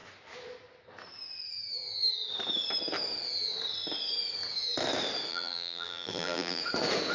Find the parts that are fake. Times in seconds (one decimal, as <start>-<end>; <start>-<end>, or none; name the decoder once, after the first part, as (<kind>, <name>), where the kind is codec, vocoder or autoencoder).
5.3-6.6 (vocoder, BigVGAN v2)